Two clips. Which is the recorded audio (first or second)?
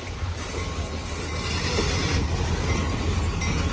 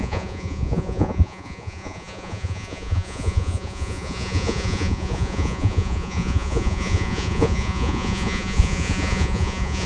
first